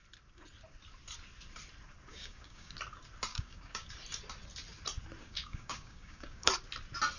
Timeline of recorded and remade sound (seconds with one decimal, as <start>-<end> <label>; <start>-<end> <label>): 0.0-2.1 recorded; 2.1-2.7 remade; 2.7-3.3 recorded; 3.3-3.9 remade; 3.9-5.2 recorded; 5.2-6.5 remade; 6.5-7.2 recorded